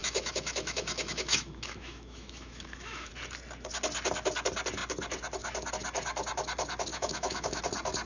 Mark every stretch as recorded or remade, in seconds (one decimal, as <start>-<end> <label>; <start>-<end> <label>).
0.0-3.1 remade; 3.1-6.9 recorded; 6.9-7.6 remade; 7.6-8.1 recorded